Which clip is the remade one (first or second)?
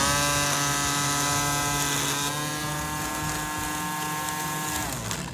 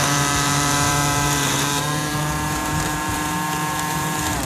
second